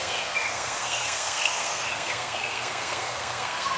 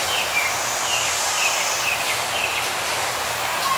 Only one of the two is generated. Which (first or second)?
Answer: first